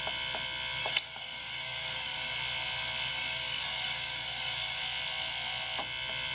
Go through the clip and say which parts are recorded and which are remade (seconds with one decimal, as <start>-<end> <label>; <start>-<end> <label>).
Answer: 0.0-0.8 recorded; 0.8-2.3 remade; 2.3-3.1 recorded; 3.1-4.8 remade; 4.8-6.3 recorded